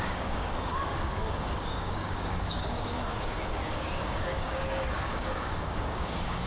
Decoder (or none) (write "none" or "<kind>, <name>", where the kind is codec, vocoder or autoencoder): codec, DAC